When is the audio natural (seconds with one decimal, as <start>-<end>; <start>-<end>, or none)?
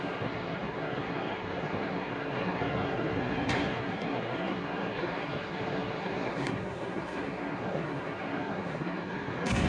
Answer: none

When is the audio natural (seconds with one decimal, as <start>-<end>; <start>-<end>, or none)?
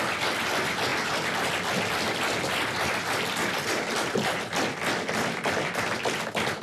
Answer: 0.0-6.6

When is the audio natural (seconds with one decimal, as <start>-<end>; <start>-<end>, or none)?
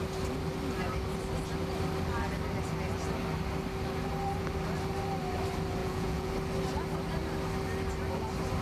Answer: 0.0-5.8; 6.3-8.6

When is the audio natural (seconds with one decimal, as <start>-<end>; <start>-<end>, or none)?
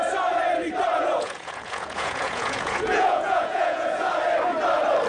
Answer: 0.0-1.0; 4.1-5.1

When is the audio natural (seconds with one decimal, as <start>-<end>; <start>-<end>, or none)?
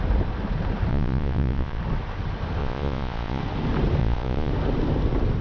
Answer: 0.0-0.9; 1.8-2.6; 3.4-4.0; 4.5-5.4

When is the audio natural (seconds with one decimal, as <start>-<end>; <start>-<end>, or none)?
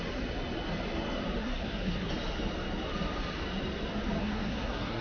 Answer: 0.0-1.4; 2.1-4.2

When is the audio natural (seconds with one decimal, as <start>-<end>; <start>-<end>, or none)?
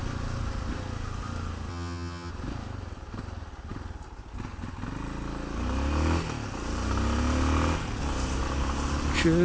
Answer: 0.0-1.7; 2.3-9.4